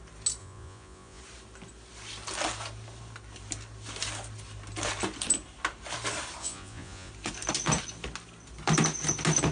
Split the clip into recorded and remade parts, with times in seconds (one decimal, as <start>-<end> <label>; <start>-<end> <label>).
0.0-0.4 recorded; 0.4-1.2 remade; 1.2-6.4 recorded; 6.4-7.1 remade; 7.1-9.5 recorded